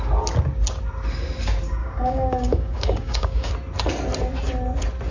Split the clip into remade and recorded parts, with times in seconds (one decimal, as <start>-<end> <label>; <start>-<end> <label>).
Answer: 0.0-1.8 recorded; 1.8-3.5 remade; 3.5-5.1 recorded